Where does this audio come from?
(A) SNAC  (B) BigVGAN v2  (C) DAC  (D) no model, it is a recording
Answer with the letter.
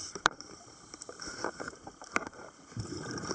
B